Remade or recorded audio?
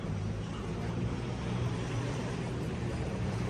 remade